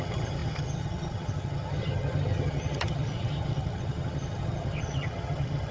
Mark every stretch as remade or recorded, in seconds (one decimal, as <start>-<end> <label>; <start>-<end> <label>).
0.0-5.7 remade